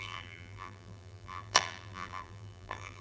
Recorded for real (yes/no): no